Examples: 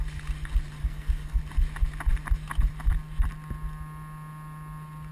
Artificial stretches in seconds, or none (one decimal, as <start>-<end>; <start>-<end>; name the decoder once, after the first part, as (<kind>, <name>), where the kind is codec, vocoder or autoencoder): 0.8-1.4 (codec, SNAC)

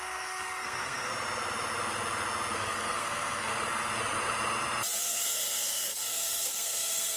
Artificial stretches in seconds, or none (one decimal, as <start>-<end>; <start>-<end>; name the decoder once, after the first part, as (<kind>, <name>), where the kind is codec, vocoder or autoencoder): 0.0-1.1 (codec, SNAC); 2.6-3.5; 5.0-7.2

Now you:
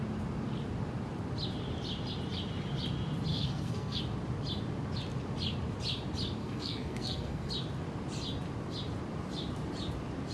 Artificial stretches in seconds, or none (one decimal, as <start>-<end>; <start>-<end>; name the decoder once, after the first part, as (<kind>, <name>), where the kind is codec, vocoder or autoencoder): 3.3-4.0 (codec, SNAC); 6.4-7.5

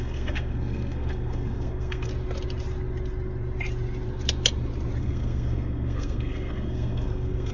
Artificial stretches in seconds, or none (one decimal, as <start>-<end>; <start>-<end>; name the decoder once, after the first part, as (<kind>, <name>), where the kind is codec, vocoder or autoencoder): 0.0-2.1 (codec, SNAC); 5.0-7.5